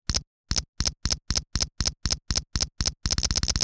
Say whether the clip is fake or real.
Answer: real